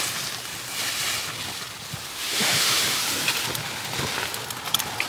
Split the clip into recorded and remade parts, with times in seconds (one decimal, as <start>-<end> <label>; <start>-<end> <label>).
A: 0.0-2.1 recorded; 2.1-3.0 remade; 3.0-5.1 recorded